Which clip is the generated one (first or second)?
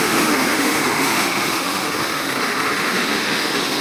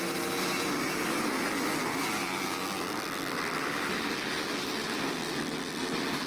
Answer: first